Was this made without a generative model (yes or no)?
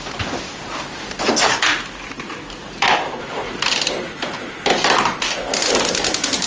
yes